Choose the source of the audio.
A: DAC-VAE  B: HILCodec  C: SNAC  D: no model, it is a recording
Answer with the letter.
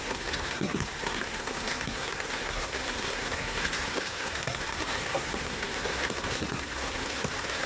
C